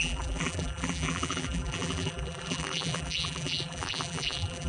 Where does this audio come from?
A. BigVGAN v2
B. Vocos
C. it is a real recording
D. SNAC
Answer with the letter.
A